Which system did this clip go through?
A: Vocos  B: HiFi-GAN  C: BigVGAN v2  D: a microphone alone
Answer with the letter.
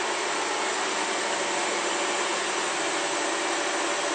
D